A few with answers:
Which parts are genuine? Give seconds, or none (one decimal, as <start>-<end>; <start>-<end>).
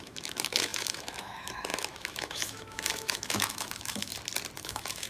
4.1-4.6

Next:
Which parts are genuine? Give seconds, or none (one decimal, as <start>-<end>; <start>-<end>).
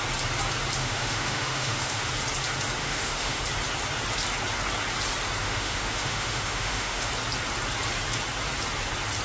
0.0-0.8; 2.0-2.8; 3.4-5.4; 7.1-9.2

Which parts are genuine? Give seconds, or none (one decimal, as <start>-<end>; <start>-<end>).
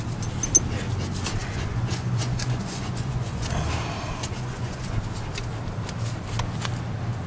0.0-1.4; 3.5-4.2; 4.9-7.3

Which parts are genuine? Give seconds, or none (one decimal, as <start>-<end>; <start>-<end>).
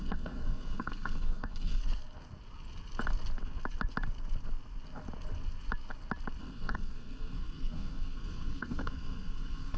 1.8-6.4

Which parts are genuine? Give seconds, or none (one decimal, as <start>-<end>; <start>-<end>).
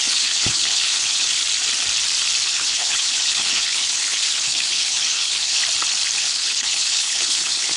1.4-2.5; 5.6-6.2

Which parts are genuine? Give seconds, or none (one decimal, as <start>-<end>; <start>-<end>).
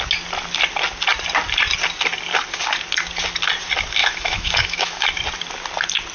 0.0-4.0; 5.1-6.1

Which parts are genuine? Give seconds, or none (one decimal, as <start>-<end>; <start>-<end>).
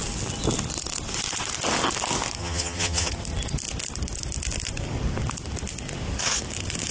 0.0-2.4; 3.1-6.9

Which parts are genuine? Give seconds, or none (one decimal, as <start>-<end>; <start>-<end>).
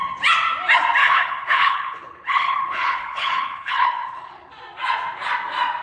0.0-1.0; 4.5-5.8